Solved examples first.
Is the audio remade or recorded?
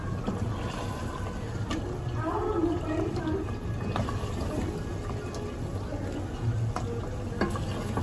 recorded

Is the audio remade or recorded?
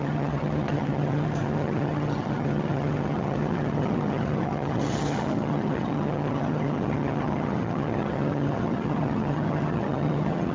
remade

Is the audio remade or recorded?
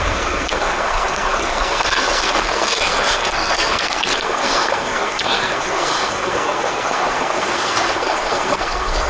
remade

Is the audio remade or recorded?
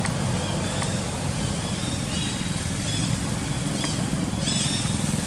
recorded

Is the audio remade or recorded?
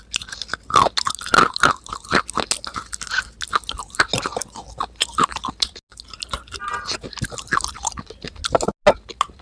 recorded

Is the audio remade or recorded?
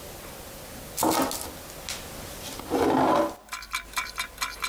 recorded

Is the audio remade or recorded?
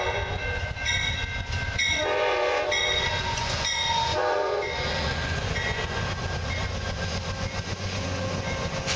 remade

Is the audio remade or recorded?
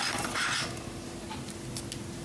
recorded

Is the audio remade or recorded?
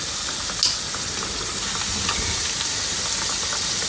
recorded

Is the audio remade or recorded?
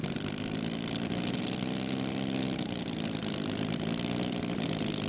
recorded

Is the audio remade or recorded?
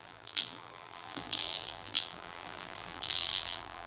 remade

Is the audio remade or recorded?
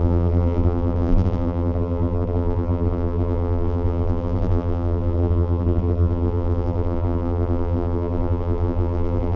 remade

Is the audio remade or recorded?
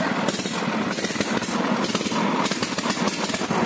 recorded